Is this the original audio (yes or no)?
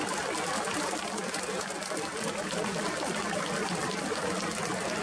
yes